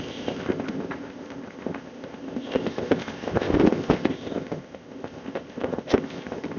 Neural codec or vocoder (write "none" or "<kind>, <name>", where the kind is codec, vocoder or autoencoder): codec, ZipCodec